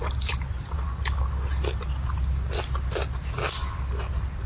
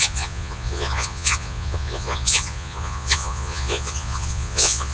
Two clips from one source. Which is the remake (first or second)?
second